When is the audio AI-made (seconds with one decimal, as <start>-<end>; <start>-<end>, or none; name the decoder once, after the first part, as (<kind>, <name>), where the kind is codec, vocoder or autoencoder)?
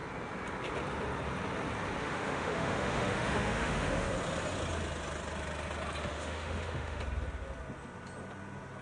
2.0-4.1 (autoencoder, DAC-VAE); 6.0-7.0